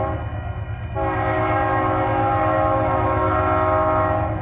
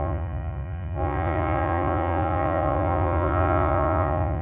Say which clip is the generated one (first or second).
second